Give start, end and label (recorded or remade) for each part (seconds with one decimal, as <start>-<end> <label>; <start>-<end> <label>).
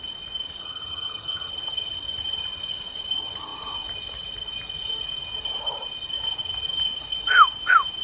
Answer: 0.0-0.6 recorded; 0.6-1.5 remade; 1.5-8.0 recorded